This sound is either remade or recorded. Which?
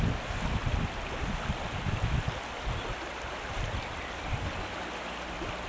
recorded